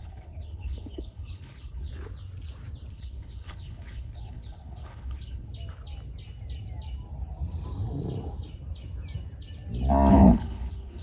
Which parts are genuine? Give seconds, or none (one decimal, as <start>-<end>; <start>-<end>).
1.9-2.9; 5.5-10.1